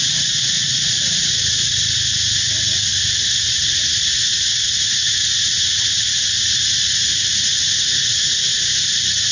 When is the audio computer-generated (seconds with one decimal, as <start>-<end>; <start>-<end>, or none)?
0.0-2.9; 3.7-9.3